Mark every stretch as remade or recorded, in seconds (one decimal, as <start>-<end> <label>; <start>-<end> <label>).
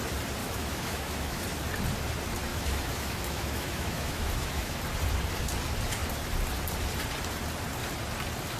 0.0-0.4 recorded; 0.4-1.4 remade; 1.4-2.5 recorded; 2.5-4.8 remade; 4.8-8.6 recorded